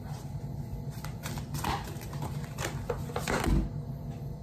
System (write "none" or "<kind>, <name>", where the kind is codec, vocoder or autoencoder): none